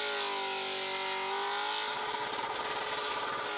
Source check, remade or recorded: recorded